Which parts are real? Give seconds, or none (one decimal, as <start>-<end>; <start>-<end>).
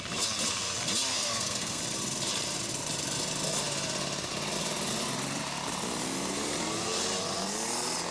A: 0.0-1.1; 1.8-8.1